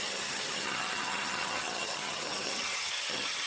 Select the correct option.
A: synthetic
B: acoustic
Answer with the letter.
A